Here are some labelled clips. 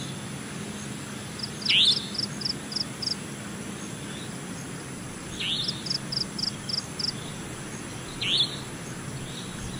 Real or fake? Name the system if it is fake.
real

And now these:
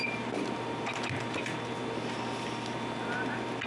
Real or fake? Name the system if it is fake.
real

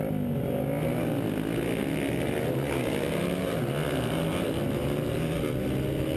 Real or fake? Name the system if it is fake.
real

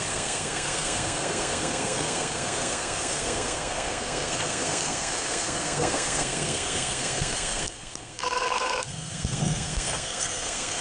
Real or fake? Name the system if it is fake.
fake, codec, SNAC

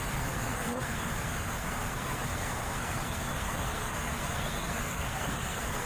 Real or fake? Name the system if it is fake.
fake, codec, SNAC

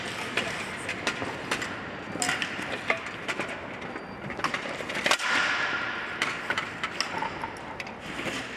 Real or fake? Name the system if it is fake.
real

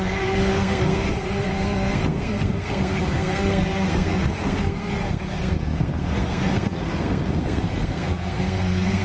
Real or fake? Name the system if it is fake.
fake, codec, SNAC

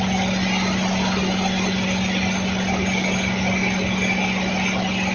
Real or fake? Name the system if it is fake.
real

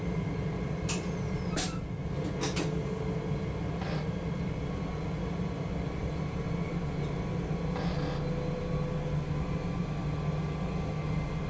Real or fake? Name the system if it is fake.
real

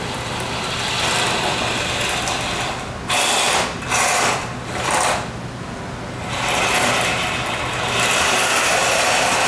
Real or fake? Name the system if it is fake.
real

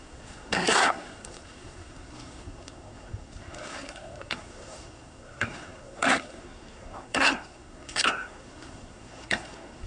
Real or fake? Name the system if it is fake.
fake, codec, SNAC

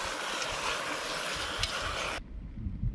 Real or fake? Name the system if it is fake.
real